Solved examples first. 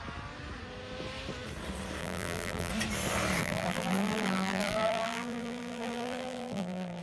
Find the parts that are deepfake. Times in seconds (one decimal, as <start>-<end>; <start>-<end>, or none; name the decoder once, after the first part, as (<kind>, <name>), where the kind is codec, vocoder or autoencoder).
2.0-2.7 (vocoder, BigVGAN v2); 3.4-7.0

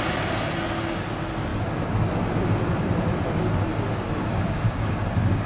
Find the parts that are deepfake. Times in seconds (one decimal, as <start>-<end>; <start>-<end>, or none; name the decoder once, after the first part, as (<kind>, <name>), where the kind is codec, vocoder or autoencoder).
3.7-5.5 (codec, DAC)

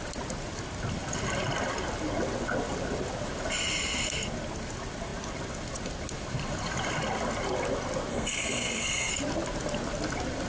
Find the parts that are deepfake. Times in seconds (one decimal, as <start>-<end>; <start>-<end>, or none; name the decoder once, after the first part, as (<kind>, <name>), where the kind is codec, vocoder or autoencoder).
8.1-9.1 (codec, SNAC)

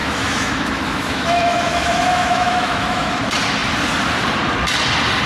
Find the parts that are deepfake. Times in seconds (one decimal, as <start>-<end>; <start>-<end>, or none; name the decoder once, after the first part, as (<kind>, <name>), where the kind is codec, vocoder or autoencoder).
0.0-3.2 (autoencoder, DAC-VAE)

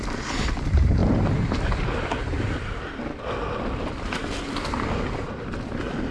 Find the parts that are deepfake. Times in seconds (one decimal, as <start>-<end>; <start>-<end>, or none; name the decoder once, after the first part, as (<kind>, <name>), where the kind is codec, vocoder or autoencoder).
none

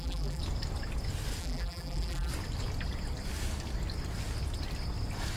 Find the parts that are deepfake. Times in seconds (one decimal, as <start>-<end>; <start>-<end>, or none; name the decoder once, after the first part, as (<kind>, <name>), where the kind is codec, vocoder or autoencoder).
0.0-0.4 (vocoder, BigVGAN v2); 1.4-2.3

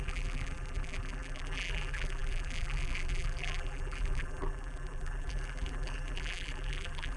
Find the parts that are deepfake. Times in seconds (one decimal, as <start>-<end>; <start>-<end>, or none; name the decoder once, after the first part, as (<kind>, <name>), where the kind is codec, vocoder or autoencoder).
0.0-7.2 (vocoder, BigVGAN v2)